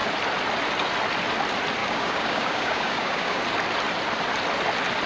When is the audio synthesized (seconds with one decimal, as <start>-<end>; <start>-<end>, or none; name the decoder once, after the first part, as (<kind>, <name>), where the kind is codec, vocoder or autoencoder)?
1.8-3.4 (codec, DAC)

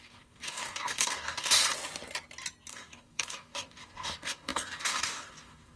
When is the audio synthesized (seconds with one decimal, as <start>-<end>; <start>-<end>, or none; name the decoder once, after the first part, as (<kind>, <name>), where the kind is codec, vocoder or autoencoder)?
0.0-1.6 (codec, DAC); 2.7-5.8